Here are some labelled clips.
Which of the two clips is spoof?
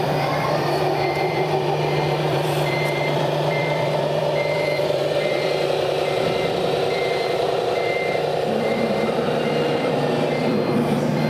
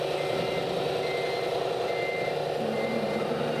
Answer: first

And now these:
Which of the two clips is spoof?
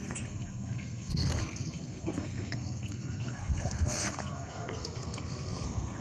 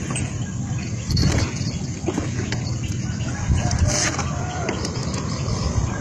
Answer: first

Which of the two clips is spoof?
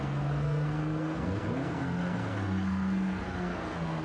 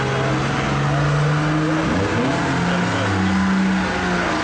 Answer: first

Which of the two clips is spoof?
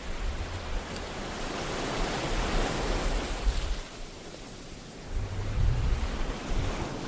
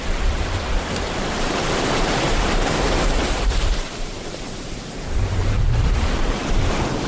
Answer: second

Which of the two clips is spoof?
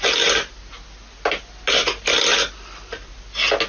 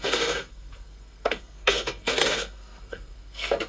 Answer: second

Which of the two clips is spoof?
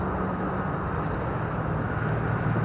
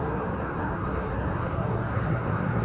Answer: second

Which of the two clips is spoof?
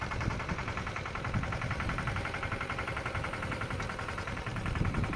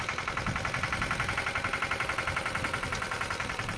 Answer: first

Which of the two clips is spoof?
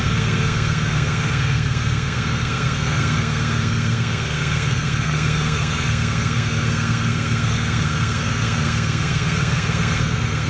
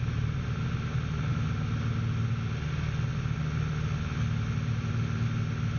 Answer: first